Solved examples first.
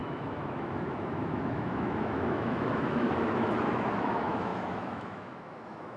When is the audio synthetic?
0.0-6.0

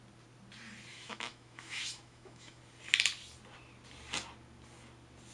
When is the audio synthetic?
0.9-2.6

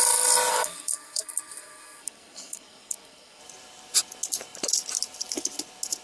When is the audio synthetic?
0.5-3.4

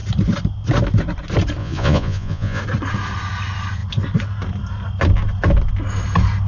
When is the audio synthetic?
1.6-2.6

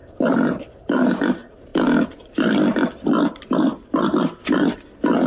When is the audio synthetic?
0.0-1.7

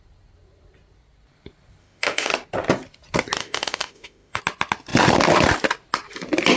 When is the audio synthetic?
1.8-2.3; 3.4-4.4

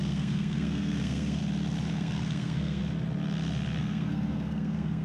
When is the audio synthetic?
0.0-1.4; 1.9-2.8; 3.8-5.0

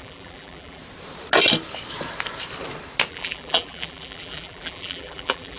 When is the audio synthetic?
0.0-0.8; 3.1-5.6